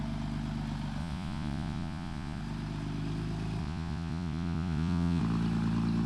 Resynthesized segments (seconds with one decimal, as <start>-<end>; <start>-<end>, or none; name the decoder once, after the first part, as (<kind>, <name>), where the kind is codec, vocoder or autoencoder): 1.0-2.4 (vocoder, Vocos); 3.6-5.2